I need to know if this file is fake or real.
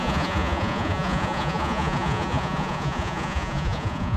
fake